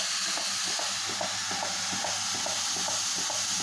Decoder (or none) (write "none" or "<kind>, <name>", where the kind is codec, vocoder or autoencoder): none